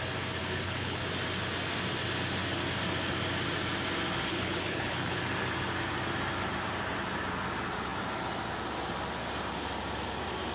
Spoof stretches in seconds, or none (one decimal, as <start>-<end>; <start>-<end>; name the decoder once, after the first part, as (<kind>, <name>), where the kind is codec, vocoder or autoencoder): 0.4-1.0 (codec, HILCodec); 4.3-5.2